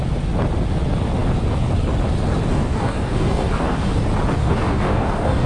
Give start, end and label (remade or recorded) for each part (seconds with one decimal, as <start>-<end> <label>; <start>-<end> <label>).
0.0-2.5 recorded; 2.5-4.0 remade; 4.0-4.4 recorded; 4.4-5.5 remade